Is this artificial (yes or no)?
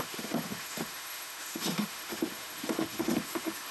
yes